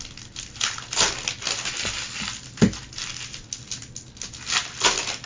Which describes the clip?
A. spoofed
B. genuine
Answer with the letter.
B